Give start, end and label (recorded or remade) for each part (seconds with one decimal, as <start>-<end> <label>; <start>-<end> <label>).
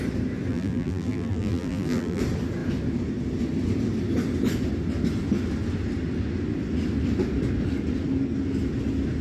0.0-0.5 recorded; 0.5-2.2 remade; 2.2-9.2 recorded